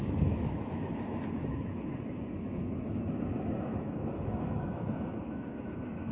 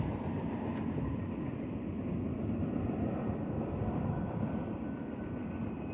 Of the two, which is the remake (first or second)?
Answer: first